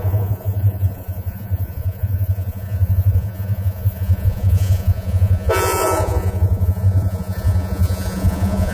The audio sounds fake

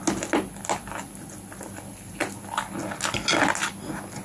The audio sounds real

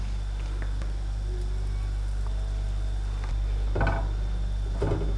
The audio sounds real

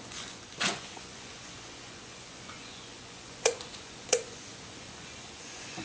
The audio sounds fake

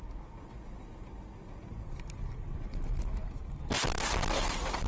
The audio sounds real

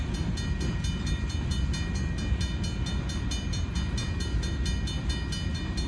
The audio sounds real